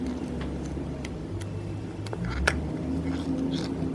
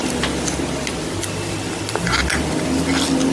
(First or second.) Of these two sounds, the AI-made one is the first